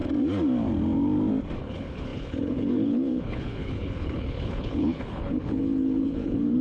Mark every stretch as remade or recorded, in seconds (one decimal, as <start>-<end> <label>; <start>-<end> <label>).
0.0-1.6 recorded; 1.6-6.6 remade